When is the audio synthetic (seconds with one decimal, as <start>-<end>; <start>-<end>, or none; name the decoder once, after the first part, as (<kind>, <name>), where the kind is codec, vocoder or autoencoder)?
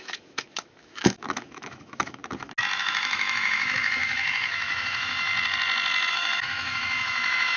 0.0-2.2 (autoencoder, DAC-VAE); 2.8-5.3; 6.1-7.6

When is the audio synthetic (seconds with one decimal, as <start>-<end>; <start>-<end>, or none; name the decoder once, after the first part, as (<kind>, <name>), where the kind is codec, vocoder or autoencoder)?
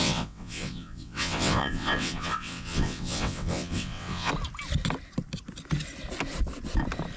0.0-4.3 (vocoder, WaveNeXt)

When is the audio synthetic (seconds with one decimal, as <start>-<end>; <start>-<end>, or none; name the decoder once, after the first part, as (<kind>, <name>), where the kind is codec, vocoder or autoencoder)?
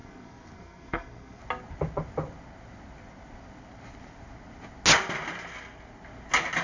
0.0-1.4 (codec, SNAC)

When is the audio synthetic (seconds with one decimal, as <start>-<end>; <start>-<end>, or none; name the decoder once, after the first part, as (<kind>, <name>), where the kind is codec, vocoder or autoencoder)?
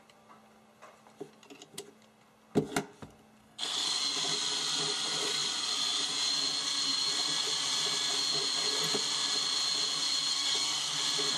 3.4-4.0 (codec, SNAC); 10.3-11.0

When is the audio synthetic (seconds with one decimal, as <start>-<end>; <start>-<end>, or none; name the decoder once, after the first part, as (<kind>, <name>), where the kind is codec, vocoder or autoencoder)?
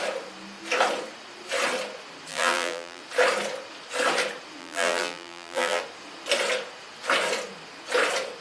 2.3-3.0 (vocoder, BigVGAN v2); 4.6-5.8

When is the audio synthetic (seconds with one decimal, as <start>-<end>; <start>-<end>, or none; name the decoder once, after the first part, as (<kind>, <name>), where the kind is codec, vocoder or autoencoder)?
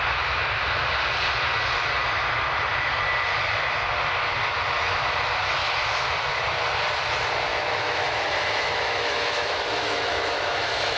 7.5-11.0 (autoencoder, DAC-VAE)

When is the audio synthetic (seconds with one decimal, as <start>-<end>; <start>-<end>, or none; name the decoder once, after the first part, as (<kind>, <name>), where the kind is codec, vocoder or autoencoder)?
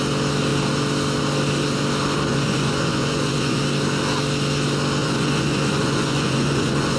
2.3-3.6 (vocoder, Vocos); 5.0-7.0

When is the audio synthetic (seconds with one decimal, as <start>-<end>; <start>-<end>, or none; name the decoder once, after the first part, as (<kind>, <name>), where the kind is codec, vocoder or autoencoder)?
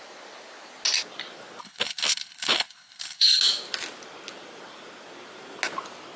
1.6-3.4 (codec, HILCodec)